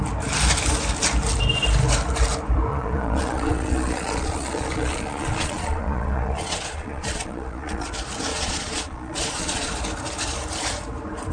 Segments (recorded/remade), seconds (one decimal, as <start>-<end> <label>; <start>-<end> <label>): 0.0-2.7 recorded; 2.7-7.9 remade; 7.9-8.3 recorded; 8.3-9.7 remade; 9.7-11.3 recorded